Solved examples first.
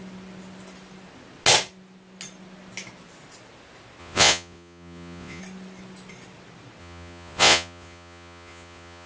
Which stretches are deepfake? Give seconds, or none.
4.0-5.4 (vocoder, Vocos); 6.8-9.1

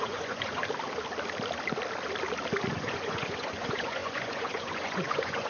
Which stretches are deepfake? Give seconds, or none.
0.0-0.6 (vocoder, Vocos); 2.7-5.5

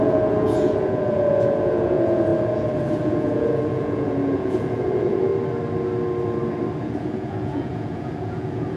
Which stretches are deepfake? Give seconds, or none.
0.0-5.3 (vocoder, Vocos); 6.8-8.8

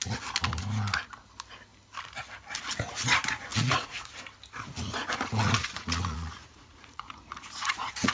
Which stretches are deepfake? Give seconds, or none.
3.5-4.1 (vocoder, Vocos); 5.0-8.1

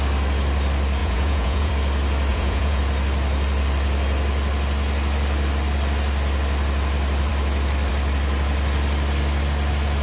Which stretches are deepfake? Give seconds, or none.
1.0-1.7 (vocoder, Vocos); 2.3-2.8